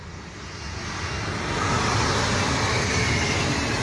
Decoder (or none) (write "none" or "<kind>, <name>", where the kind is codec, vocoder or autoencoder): none